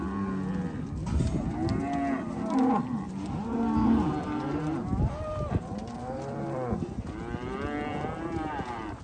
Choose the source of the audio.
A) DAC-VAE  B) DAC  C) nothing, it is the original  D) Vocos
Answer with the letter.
C